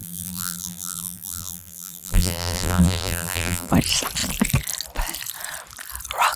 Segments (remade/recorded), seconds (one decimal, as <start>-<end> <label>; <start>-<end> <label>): 0.0-3.7 remade; 3.7-6.4 recorded